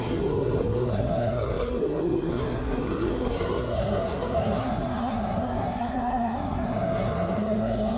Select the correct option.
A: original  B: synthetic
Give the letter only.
B